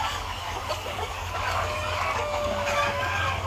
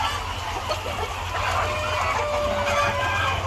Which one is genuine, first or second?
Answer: second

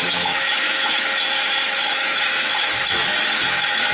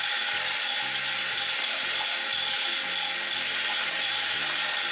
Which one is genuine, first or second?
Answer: second